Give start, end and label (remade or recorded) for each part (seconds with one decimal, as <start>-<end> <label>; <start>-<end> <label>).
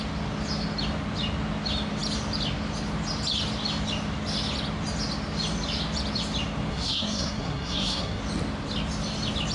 0.0-6.7 recorded; 6.7-8.2 remade; 8.2-9.5 recorded